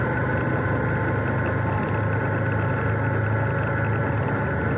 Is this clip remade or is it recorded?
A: recorded